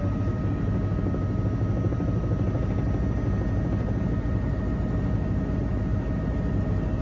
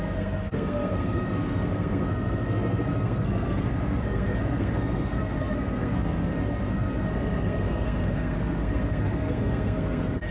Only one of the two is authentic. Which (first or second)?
first